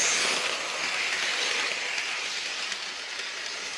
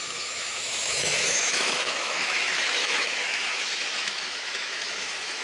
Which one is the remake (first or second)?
second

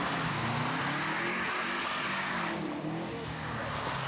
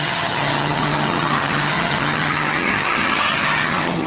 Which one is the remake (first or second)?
second